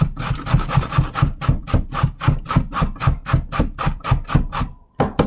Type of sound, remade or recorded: remade